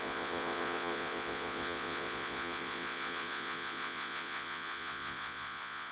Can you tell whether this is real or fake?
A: fake